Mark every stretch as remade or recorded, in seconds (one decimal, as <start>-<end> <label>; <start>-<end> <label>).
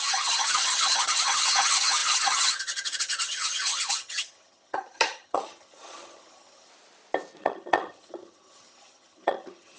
0.0-6.7 remade; 6.7-7.4 recorded; 7.4-9.8 remade